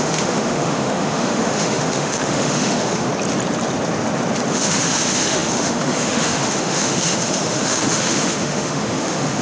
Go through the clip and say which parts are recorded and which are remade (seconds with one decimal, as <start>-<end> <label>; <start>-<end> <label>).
0.0-3.1 remade; 3.1-4.5 recorded; 4.5-9.4 remade

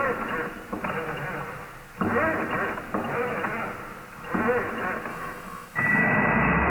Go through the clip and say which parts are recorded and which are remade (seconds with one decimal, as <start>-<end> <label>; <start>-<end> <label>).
0.0-5.1 recorded; 5.1-6.0 remade; 6.0-6.7 recorded

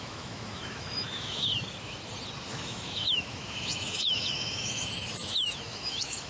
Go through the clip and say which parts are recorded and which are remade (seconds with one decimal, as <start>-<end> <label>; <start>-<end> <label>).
0.0-1.5 remade; 1.5-2.5 recorded; 2.5-6.3 remade

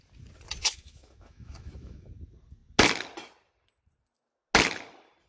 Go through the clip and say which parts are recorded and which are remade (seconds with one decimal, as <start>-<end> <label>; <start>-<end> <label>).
0.0-0.6 recorded; 0.6-2.1 remade; 2.1-5.3 recorded

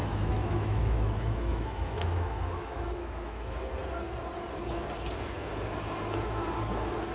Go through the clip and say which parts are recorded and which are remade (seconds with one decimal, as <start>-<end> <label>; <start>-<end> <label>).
0.0-3.6 remade; 3.6-7.1 recorded

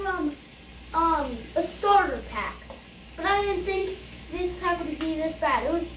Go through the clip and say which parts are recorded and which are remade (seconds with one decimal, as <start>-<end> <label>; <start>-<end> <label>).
0.0-3.8 recorded; 3.8-4.8 remade; 4.8-6.0 recorded